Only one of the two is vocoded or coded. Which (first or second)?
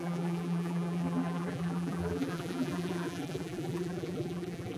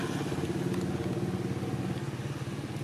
first